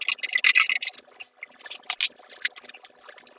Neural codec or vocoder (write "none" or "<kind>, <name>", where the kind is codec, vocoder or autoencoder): none